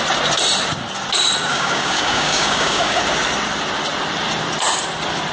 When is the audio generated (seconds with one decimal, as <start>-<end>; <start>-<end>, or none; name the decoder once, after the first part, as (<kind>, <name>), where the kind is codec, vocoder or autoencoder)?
1.5-3.0 (codec, DAC)